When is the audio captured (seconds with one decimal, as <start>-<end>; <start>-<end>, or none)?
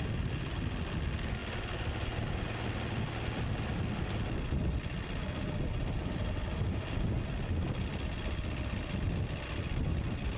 0.0-10.4